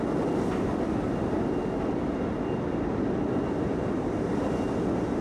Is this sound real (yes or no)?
no